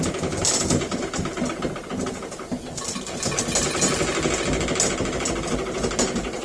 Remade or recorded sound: recorded